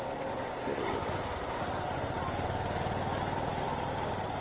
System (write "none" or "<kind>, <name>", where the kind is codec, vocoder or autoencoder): none